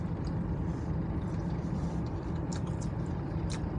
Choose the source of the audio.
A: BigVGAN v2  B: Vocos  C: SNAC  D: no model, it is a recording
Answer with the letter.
A